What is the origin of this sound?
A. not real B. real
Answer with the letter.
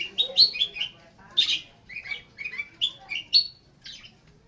B